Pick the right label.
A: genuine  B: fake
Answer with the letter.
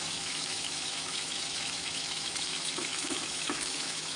B